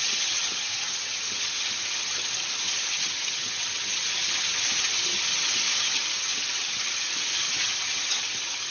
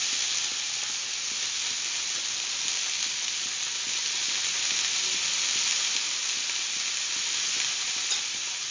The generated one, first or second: first